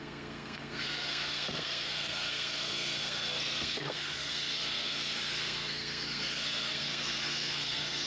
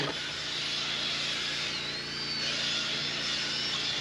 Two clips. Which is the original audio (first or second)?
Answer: second